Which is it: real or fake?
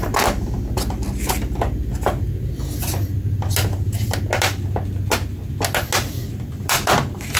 real